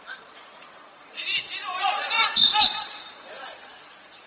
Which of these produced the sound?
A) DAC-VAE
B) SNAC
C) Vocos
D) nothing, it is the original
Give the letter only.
C